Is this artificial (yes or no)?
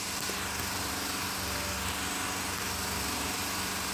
no